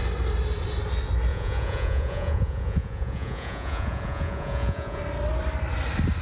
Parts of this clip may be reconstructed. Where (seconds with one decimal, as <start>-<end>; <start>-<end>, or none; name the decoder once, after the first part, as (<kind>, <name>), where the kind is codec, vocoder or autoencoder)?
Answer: 1.3-5.0 (vocoder, Vocos)